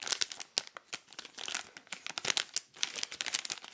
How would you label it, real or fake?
real